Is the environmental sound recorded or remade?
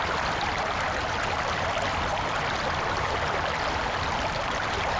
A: recorded